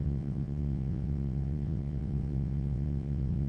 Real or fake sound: fake